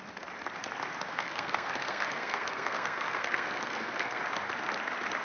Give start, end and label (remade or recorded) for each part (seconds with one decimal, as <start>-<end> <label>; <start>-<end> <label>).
0.0-1.1 recorded; 1.1-4.2 remade; 4.2-5.2 recorded